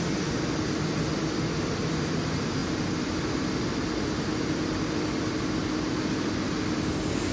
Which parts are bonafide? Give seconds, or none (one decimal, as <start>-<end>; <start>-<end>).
0.0-7.3